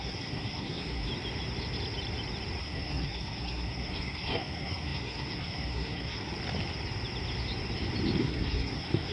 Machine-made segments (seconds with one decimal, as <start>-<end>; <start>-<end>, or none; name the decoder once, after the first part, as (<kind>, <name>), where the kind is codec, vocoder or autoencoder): 0.0-1.1 (codec, SNAC); 2.6-6.3; 8.2-9.1

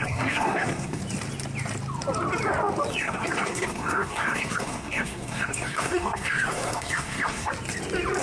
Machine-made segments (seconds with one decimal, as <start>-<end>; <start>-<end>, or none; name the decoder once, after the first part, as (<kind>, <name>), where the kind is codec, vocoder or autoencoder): 0.0-1.0 (codec, SNAC); 2.9-7.5

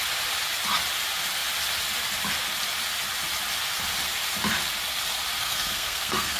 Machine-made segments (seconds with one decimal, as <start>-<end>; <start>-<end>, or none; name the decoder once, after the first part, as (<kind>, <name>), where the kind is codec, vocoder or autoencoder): 5.4-6.4 (codec, SNAC)

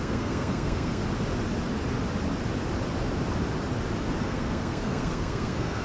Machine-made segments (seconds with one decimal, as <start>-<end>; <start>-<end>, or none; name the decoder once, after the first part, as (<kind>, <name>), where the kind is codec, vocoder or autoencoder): 0.0-1.0 (codec, SNAC); 4.2-5.8

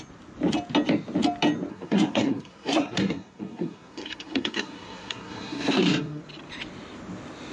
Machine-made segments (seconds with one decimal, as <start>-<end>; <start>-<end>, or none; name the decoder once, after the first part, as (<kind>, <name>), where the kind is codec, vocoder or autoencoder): 1.7-6.2 (codec, SNAC)

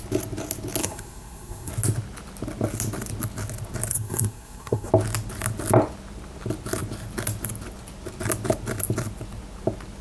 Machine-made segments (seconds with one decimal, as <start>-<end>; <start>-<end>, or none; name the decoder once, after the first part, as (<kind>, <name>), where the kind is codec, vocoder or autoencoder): 0.8-1.7 (codec, SNAC); 3.9-4.9